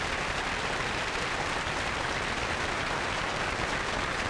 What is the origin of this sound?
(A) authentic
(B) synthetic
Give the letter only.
A